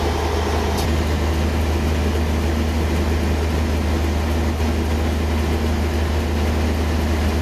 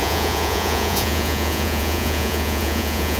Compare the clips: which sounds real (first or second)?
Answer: first